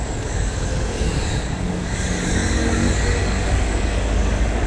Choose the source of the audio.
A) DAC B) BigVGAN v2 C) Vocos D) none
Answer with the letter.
A